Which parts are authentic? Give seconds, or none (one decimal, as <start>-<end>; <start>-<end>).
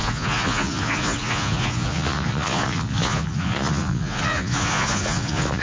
none